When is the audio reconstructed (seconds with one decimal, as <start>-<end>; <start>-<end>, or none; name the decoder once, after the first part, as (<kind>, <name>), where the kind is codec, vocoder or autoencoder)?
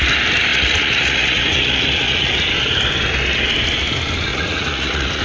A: 0.5-2.3 (vocoder, Vocos); 4.3-5.2